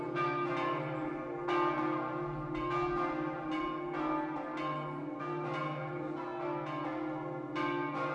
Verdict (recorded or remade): recorded